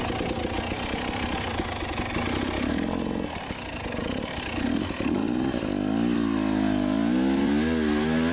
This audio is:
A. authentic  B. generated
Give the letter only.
A